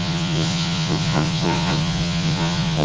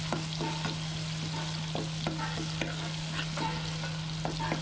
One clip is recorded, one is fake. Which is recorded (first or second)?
second